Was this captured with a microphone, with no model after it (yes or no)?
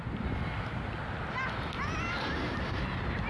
yes